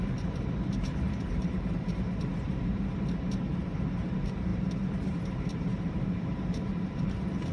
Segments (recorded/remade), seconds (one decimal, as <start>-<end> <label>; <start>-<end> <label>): 0.0-7.5 remade